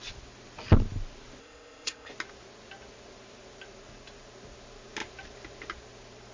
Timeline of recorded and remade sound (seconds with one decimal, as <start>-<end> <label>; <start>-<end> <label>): 0.0-1.4 recorded; 1.4-2.1 remade; 2.1-6.3 recorded